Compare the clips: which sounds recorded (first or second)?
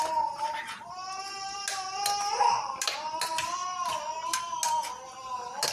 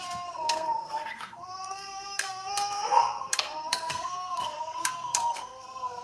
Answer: first